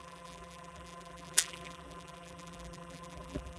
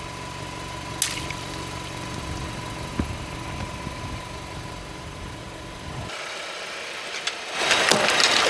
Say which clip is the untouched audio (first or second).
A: second